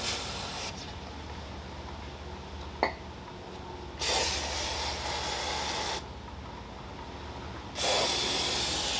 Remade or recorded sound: recorded